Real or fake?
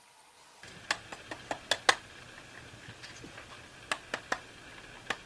real